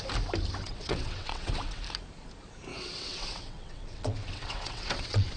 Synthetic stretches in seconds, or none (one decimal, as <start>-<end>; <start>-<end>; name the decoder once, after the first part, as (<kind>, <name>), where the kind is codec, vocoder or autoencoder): 0.6-1.8 (vocoder, WaveNeXt); 2.7-5.4

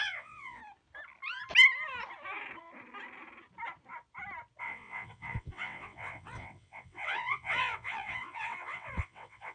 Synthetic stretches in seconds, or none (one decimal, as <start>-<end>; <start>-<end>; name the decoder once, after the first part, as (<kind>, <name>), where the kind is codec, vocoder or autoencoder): 0.0-0.6 (vocoder, WaveNeXt); 4.6-9.5

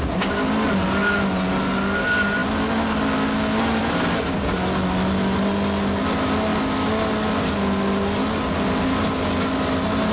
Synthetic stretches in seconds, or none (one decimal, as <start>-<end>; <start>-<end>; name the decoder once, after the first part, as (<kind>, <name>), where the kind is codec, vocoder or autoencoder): none

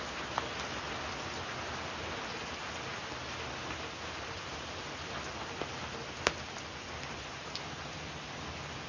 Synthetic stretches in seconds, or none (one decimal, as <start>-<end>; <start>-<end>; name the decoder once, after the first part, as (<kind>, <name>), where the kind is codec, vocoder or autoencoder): none

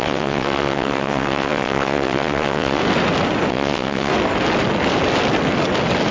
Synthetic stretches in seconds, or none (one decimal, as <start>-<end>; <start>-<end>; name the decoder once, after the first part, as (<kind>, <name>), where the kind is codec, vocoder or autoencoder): 0.0-2.8 (vocoder, WaveNeXt); 3.5-4.1